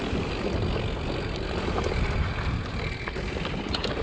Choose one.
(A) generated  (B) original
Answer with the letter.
B